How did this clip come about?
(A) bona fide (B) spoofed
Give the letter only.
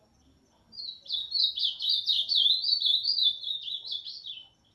A